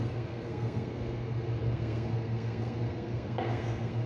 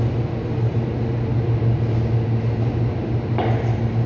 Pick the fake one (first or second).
first